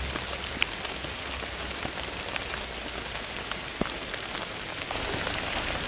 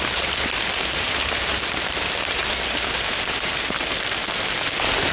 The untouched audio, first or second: first